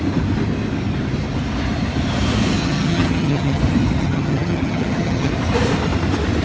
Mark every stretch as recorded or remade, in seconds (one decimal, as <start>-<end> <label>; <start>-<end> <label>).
0.0-2.6 recorded; 2.6-3.6 remade; 3.6-4.0 recorded; 4.0-5.3 remade; 5.3-6.4 recorded